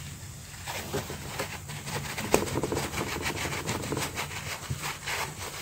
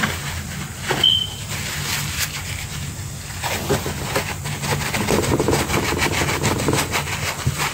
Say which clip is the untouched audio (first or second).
second